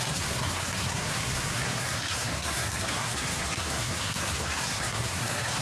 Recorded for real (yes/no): no